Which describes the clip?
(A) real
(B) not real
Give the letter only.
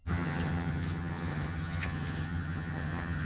B